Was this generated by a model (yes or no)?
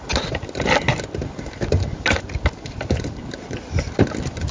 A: no